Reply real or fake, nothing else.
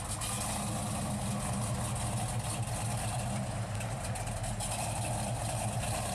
real